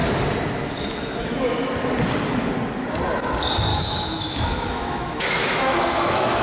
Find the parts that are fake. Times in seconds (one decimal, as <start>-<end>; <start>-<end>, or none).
3.7-6.4